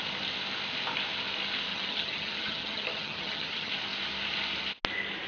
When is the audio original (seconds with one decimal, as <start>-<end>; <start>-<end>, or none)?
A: 0.0-1.7; 3.7-5.3